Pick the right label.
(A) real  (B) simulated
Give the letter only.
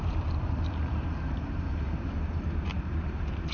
B